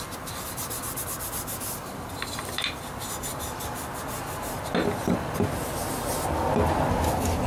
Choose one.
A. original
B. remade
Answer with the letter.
A